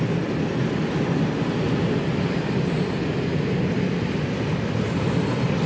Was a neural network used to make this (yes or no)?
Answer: no